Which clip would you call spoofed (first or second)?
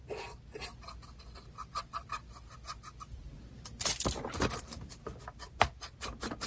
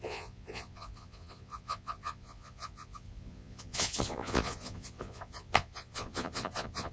second